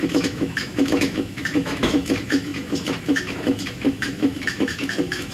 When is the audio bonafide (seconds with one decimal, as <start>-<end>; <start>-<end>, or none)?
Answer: none